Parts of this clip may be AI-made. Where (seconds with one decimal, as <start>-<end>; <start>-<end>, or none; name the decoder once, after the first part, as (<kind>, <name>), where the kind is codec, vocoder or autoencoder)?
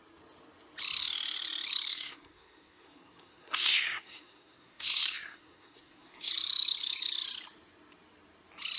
1.9-6.3 (codec, SNAC)